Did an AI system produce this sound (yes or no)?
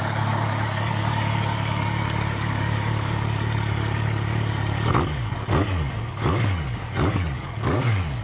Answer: yes